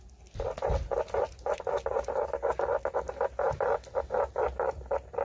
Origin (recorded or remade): recorded